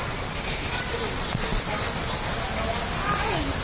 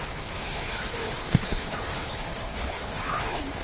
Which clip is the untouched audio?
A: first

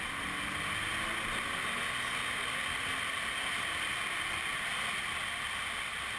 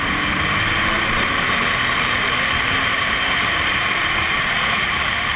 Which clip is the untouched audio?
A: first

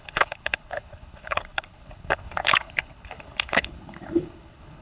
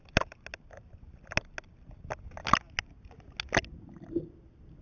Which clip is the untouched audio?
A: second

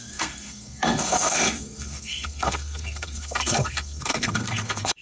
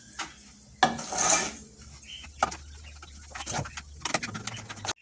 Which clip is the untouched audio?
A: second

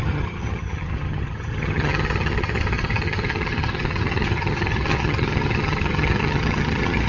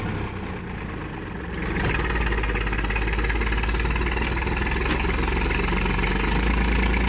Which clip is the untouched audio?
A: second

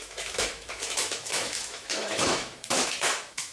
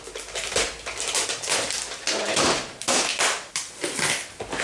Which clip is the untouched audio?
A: second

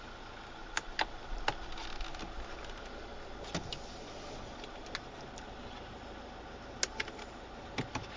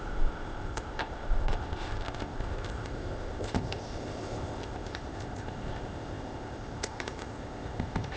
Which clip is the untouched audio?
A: first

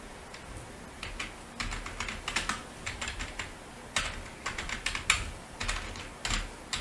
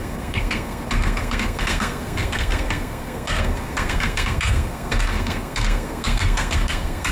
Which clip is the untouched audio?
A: first